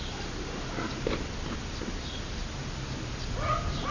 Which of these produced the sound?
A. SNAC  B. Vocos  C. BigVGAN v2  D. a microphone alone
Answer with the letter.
D